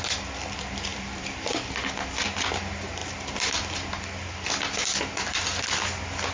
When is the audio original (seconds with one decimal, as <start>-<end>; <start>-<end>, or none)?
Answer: 0.0-6.3

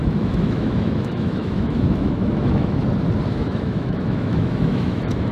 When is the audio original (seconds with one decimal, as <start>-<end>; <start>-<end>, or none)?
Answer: 2.8-3.3

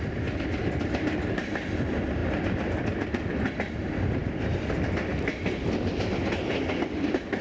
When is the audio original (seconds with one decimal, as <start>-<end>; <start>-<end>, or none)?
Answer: 0.0-7.4

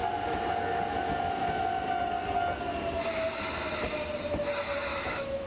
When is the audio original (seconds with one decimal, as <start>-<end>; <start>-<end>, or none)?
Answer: 0.0-4.9